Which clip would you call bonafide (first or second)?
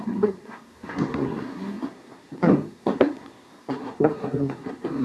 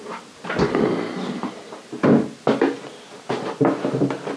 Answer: second